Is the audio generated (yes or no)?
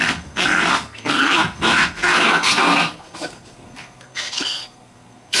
yes